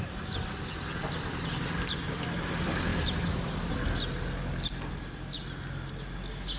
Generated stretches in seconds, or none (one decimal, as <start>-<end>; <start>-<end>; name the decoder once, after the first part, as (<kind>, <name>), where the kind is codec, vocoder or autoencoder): none